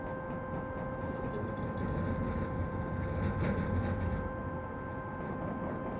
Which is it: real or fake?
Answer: real